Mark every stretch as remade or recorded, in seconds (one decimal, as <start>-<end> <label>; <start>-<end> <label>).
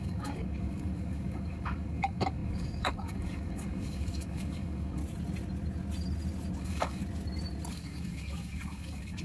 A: 0.0-5.0 remade; 5.0-6.6 recorded; 6.6-7.0 remade; 7.0-7.7 recorded; 7.7-9.2 remade